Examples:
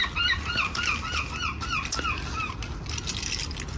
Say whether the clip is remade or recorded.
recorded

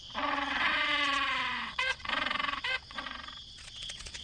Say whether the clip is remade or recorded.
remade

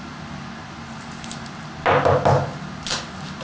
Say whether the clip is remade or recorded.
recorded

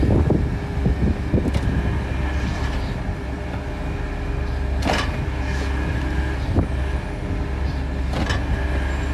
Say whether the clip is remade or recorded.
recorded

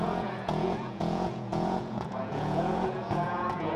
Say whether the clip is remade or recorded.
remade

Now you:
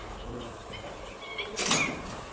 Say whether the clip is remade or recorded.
recorded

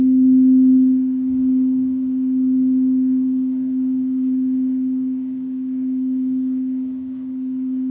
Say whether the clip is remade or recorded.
remade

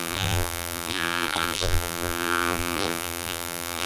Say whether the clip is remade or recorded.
remade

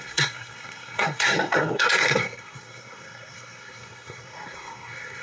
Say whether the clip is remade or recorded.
remade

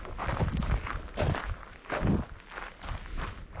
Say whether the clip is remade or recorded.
recorded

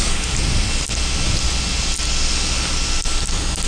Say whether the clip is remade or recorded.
recorded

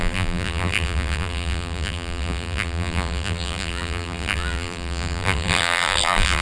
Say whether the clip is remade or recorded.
remade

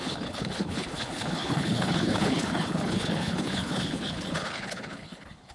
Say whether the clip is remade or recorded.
remade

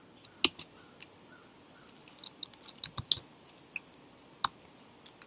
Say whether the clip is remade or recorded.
recorded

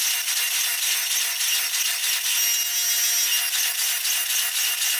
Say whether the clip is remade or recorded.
recorded